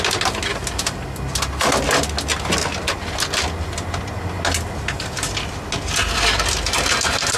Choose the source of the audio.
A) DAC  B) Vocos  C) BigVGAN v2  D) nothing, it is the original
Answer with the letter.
D